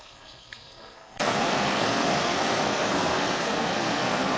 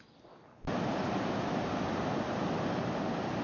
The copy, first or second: first